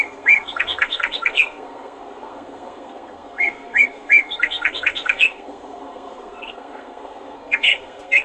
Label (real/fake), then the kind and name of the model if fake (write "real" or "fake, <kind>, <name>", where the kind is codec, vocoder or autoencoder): fake, codec, SNAC